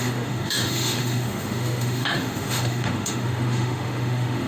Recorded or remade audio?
remade